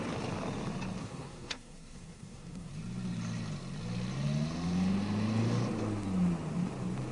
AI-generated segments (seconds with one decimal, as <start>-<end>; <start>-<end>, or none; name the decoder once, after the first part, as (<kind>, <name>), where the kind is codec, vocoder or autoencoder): 1.0-2.7 (codec, SNAC)